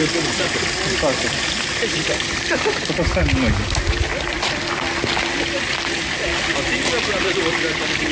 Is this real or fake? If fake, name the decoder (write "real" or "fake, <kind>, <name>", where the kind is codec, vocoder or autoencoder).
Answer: real